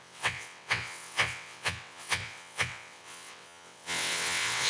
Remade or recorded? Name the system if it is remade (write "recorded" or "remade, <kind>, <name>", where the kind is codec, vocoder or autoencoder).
remade, vocoder, WaveNeXt